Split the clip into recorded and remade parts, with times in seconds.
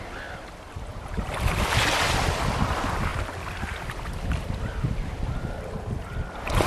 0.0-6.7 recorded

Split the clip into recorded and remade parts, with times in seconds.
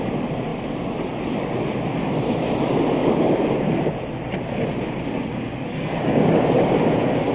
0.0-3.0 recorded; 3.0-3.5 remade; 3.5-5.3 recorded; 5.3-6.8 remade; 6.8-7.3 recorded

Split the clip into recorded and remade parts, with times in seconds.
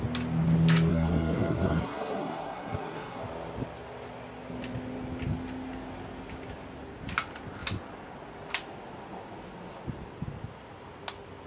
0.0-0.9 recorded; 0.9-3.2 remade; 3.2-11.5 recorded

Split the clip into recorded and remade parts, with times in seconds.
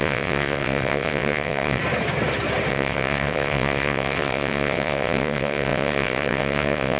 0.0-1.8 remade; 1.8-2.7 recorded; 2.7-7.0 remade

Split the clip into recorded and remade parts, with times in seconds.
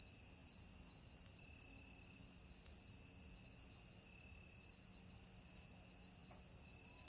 0.0-7.1 recorded